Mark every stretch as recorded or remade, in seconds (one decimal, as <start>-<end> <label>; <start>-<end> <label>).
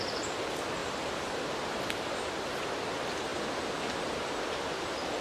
0.0-0.8 recorded; 0.8-2.3 remade; 2.3-5.2 recorded